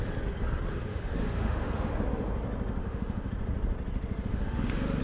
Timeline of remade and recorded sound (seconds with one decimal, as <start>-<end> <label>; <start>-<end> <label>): 0.0-0.9 recorded; 0.9-1.9 remade; 1.9-2.8 recorded; 2.8-3.3 remade; 3.3-4.3 recorded; 4.3-5.0 remade